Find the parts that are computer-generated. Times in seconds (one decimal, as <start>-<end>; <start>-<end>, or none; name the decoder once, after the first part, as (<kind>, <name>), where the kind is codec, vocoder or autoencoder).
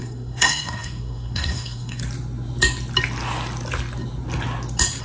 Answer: 0.0-2.0 (codec, SNAC)